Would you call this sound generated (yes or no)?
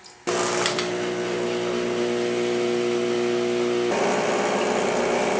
no